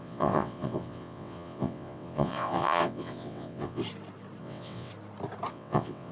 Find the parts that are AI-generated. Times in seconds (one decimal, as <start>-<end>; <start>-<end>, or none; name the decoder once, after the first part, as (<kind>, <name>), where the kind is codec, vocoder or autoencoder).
0.0-3.8 (vocoder, WaveNeXt); 4.4-4.9; 5.5-6.1